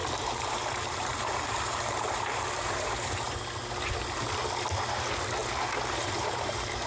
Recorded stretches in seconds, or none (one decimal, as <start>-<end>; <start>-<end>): 3.3-6.9